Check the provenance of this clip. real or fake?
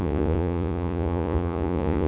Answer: fake